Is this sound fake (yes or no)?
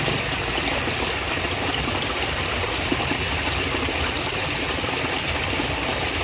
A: yes